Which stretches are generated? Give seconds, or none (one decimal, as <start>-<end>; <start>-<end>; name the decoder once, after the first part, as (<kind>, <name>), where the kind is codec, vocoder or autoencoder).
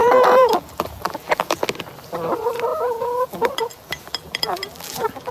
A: 0.0-1.6 (vocoder, BigVGAN v2); 2.7-5.3